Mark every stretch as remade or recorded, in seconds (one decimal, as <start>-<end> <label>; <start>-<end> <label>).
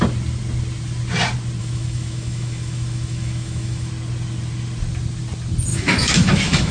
0.0-1.6 recorded; 1.6-3.9 remade; 3.9-5.7 recorded; 5.7-6.7 remade